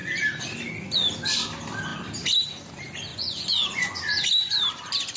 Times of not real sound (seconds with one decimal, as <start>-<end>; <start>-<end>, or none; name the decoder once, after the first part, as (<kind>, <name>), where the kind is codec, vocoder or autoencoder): 3.1-4.0 (vocoder, Vocos)